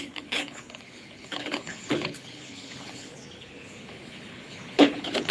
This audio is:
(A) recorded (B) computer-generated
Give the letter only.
B